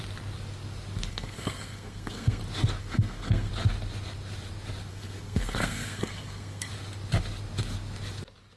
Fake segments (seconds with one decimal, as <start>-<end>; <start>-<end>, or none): 1.1-2.4; 2.8-3.5; 4.9-6.7